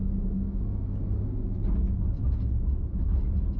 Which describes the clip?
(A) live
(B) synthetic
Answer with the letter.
A